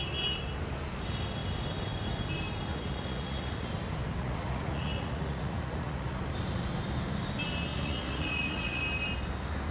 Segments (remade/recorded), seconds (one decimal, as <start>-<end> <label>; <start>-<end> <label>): 0.0-2.7 recorded; 2.7-3.7 remade; 3.7-4.2 recorded; 4.2-6.2 remade; 6.2-7.7 recorded; 7.7-8.8 remade; 8.8-9.7 recorded